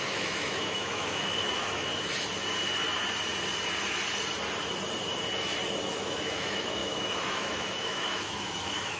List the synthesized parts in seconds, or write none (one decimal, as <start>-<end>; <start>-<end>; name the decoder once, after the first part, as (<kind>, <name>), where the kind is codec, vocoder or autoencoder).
0.0-1.9 (autoencoder, DAC-VAE); 5.9-9.0